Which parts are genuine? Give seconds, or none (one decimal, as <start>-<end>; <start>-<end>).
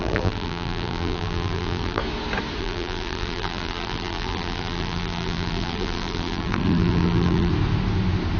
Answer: 2.0-2.6; 7.5-8.4